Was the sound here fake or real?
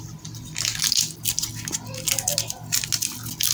real